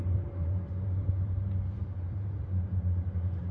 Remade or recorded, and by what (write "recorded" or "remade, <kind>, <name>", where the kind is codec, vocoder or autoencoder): remade, vocoder, BigVGAN v2